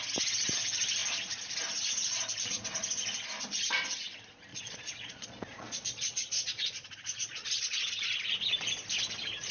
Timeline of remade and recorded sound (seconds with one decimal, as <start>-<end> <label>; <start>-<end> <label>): 0.0-4.5 recorded; 4.5-7.9 remade; 7.9-9.5 recorded